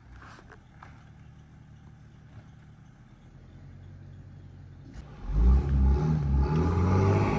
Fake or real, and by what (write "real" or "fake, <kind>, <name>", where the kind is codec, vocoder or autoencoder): real